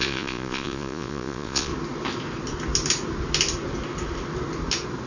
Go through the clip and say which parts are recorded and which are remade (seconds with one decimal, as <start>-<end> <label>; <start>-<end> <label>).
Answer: 0.0-1.7 remade; 1.7-5.1 recorded

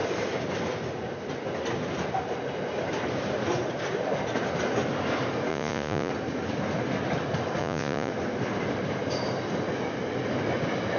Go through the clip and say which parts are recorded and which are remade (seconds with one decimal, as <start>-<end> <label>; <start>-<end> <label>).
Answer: 0.0-5.5 recorded; 5.5-6.1 remade; 6.1-7.6 recorded; 7.6-8.1 remade; 8.1-11.0 recorded

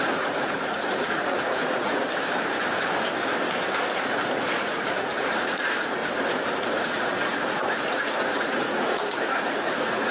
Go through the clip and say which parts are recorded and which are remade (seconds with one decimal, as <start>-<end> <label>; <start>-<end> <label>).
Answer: 0.0-2.0 remade; 2.0-4.0 recorded; 4.0-6.0 remade; 6.0-6.6 recorded; 6.6-10.1 remade

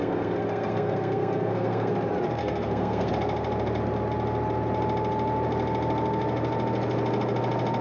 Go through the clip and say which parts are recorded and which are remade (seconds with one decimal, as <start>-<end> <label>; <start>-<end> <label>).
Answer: 0.0-1.9 remade; 1.9-2.4 recorded; 2.4-3.1 remade; 3.1-7.8 recorded

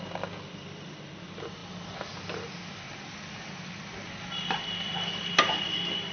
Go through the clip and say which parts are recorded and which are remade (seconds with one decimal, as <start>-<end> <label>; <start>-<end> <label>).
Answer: 0.0-6.1 recorded